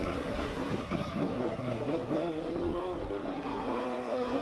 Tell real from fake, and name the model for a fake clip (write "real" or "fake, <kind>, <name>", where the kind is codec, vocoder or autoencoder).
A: fake, codec, SNAC